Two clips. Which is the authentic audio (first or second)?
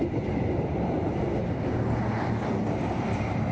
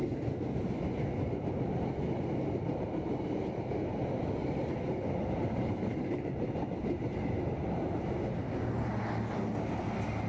second